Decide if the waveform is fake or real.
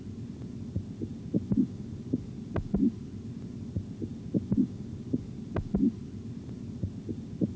real